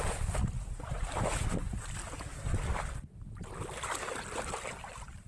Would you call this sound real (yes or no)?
yes